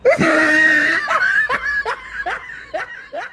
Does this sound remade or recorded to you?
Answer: remade